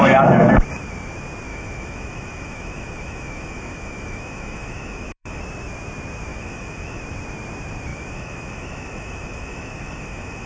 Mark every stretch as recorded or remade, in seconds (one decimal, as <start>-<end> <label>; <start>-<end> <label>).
0.0-1.5 recorded; 1.5-5.4 remade; 5.4-6.3 recorded; 6.3-7.0 remade; 7.0-7.9 recorded; 7.9-10.5 remade